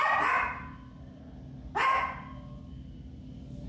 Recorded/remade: recorded